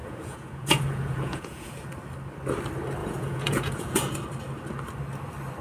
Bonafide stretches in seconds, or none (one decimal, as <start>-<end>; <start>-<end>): 1.8-3.0; 4.1-5.6